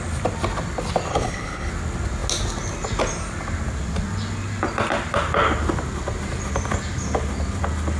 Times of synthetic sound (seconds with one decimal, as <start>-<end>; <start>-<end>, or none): 1.1-1.7